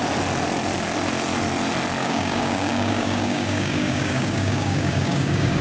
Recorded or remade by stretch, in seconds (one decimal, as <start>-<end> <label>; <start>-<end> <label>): 0.0-2.0 recorded; 2.0-5.6 remade